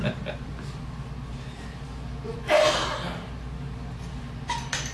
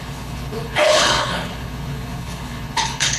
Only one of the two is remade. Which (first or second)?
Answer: second